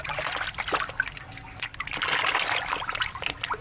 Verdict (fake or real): real